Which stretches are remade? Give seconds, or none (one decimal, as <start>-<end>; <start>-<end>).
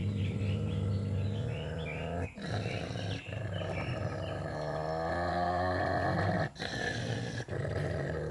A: 5.3-5.8